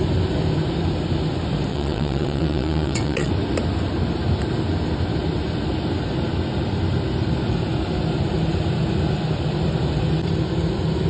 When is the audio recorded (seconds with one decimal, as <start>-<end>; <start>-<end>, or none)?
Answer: 0.0-1.7; 3.3-11.1